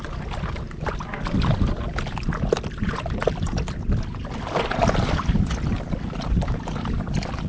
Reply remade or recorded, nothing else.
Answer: recorded